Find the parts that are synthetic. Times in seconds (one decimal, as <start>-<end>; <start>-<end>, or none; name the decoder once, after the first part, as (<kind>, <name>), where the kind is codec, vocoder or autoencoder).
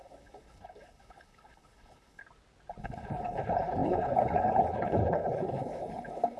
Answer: 0.0-2.2 (codec, HILCodec); 2.8-6.4